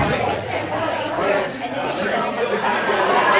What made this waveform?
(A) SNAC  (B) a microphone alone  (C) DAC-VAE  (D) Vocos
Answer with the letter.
D